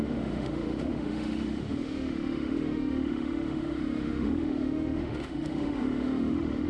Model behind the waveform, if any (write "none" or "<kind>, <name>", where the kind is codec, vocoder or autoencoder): autoencoder, DAC-VAE